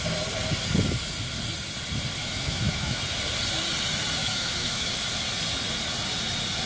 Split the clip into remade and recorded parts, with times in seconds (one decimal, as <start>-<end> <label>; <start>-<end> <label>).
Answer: 0.0-2.2 recorded; 2.2-3.0 remade; 3.0-4.2 recorded; 4.2-4.9 remade; 4.9-6.7 recorded